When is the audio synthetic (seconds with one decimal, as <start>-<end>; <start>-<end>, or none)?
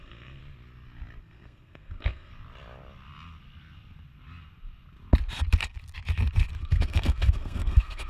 0.0-0.4; 1.2-2.3; 6.6-8.1